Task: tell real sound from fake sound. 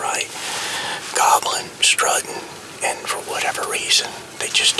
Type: real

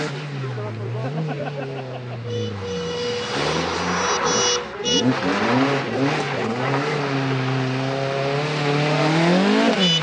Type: real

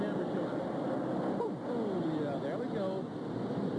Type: real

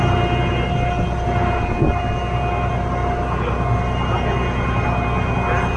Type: real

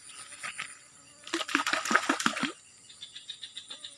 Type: real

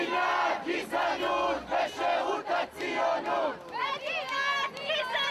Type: real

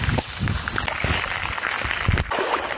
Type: real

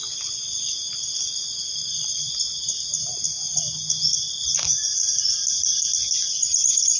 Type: real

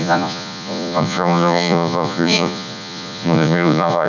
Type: fake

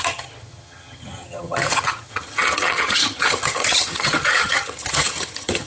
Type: fake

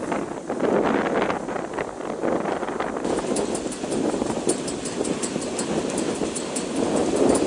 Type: real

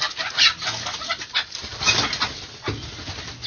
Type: real